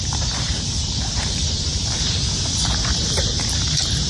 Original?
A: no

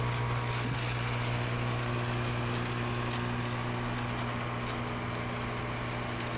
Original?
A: yes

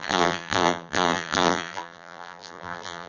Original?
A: no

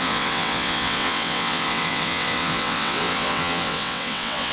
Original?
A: no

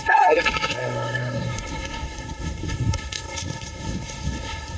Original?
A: no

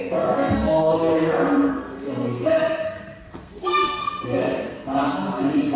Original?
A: no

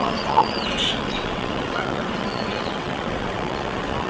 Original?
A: no